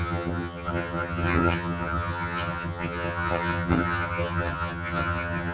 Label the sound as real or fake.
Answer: fake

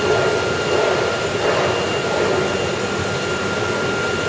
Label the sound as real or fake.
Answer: real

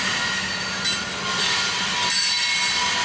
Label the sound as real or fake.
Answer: real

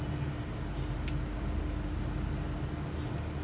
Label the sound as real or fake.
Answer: real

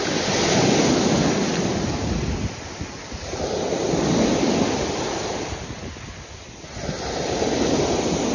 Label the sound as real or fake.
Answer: real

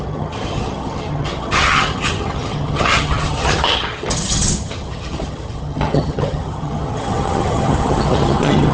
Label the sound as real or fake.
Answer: fake